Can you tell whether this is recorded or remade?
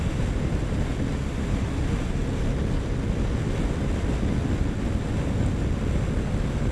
recorded